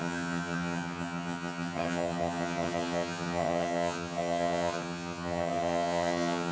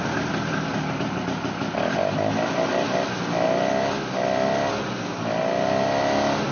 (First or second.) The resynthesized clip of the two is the first